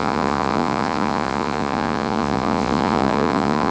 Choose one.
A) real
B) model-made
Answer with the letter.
B